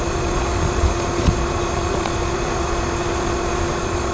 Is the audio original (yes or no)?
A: no